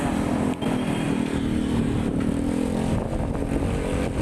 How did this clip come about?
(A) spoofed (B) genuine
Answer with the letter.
B